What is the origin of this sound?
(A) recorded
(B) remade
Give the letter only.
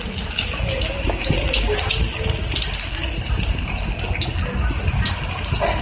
A